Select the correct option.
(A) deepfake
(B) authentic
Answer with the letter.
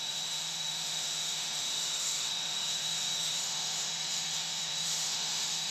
A